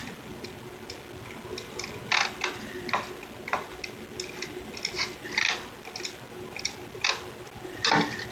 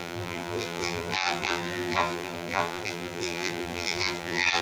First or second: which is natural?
first